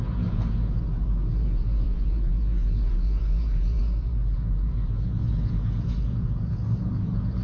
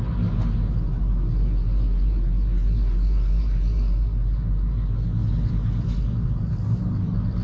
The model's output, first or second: first